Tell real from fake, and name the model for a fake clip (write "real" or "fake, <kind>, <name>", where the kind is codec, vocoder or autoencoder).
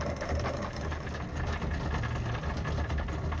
real